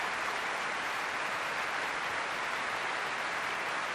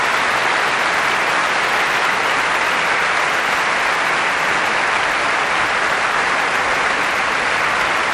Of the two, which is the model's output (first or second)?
first